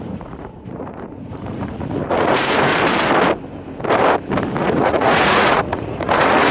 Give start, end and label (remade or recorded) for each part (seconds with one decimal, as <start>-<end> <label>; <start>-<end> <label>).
0.0-2.7 remade; 2.7-4.6 recorded; 4.6-6.5 remade

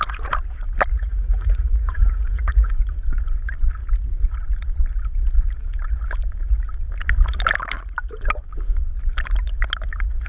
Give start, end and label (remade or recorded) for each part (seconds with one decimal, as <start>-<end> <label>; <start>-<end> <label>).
0.0-0.9 recorded; 0.9-2.7 remade; 2.7-10.3 recorded

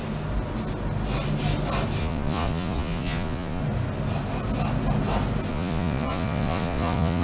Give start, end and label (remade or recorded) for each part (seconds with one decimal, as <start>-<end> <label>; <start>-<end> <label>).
0.0-2.0 recorded; 2.0-3.6 remade; 3.6-5.5 recorded; 5.5-7.2 remade

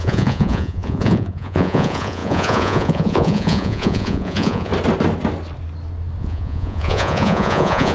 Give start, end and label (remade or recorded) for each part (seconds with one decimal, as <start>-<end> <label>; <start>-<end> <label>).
0.0-4.7 remade; 4.7-6.2 recorded; 6.2-7.9 remade

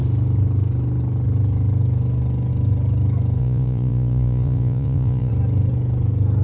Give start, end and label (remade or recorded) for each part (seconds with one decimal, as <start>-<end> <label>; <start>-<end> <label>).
0.0-3.4 recorded; 3.4-5.3 remade; 5.3-6.4 recorded

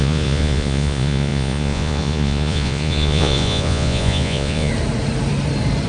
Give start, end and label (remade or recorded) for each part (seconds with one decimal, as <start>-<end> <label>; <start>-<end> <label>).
0.0-4.7 remade; 4.7-5.9 recorded